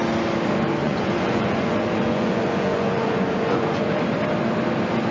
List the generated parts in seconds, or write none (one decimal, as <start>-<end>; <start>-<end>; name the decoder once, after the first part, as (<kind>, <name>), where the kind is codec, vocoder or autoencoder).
0.8-3.9 (vocoder, Vocos)